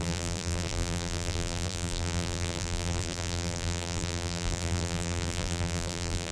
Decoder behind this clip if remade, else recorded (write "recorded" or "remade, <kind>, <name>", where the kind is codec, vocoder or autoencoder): remade, vocoder, BigVGAN v2